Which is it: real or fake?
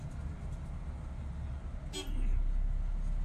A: real